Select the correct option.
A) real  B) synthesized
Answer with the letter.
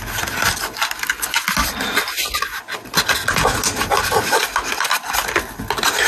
A